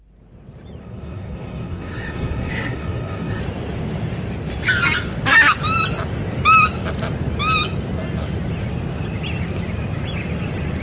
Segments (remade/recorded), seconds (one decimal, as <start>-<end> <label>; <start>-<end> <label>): 0.0-0.8 recorded; 0.8-3.4 remade; 3.4-10.8 recorded